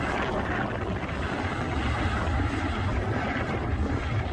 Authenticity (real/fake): real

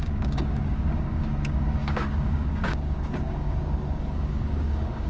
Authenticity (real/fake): fake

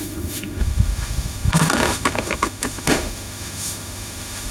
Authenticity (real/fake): fake